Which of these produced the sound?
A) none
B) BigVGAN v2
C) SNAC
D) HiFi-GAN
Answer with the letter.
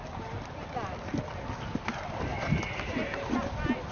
A